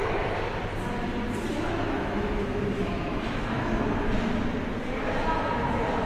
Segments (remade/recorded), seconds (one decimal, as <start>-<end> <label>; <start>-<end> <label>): 0.0-1.5 recorded; 1.5-4.1 remade; 4.1-6.1 recorded